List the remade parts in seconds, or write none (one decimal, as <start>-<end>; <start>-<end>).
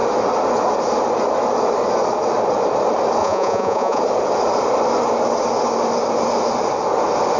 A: 3.2-4.0